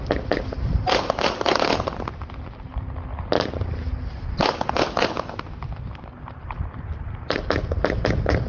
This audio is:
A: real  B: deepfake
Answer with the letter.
A